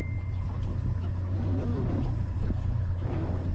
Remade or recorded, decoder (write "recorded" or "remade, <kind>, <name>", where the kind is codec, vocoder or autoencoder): recorded